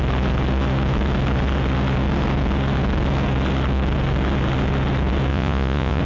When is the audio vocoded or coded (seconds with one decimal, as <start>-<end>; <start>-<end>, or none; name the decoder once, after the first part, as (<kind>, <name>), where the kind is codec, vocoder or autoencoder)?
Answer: 5.3-6.0 (vocoder, Vocos)